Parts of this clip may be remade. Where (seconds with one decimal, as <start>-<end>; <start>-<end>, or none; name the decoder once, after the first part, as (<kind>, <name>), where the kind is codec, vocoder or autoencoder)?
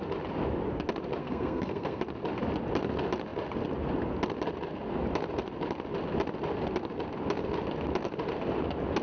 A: 1.2-2.0 (codec, SNAC)